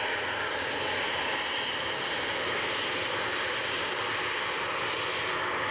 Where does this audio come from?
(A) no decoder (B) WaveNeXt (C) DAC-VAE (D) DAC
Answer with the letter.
A